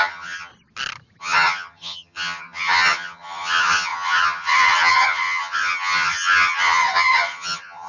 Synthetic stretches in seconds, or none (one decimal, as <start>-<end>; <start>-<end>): 0.0-0.5; 1.2-7.9